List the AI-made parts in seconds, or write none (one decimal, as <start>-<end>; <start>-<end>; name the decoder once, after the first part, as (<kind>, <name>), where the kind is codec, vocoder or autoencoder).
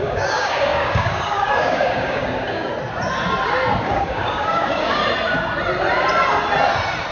0.0-2.7 (codec, DAC); 3.8-5.0